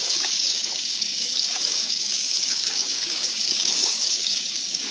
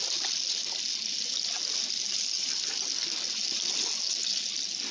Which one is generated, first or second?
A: first